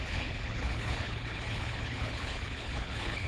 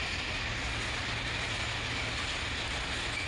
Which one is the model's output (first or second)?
first